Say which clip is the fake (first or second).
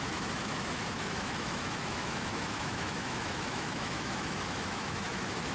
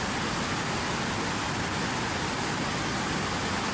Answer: first